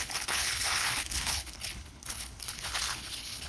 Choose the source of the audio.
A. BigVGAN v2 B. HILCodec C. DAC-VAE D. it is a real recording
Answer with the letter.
B